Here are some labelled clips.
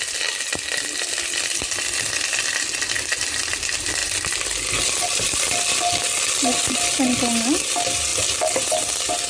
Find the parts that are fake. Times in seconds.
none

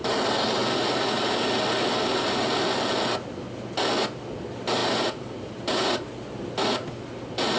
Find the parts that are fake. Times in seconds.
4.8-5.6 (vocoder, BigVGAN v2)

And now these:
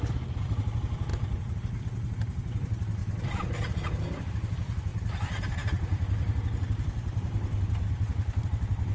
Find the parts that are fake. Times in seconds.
0.0-8.9 (vocoder, BigVGAN v2)

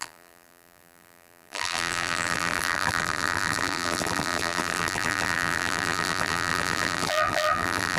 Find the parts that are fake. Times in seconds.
0.0-8.0 (vocoder, BigVGAN v2)

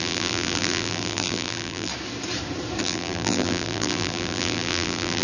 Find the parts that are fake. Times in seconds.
0.0-1.9 (vocoder, BigVGAN v2); 2.8-5.2

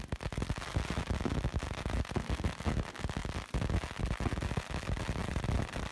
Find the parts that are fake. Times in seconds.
5.2-5.9 (vocoder, BigVGAN v2)

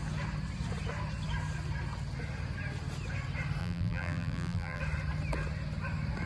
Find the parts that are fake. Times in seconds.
3.6-4.8 (vocoder, BigVGAN v2)

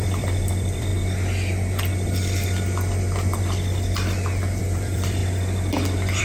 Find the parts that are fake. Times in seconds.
0.0-0.9 (vocoder, BigVGAN v2); 4.6-5.2